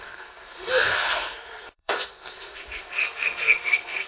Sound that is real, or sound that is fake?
fake